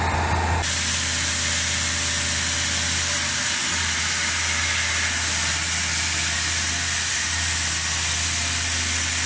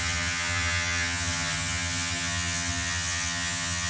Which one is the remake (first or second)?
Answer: second